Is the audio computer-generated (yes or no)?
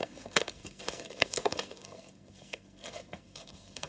yes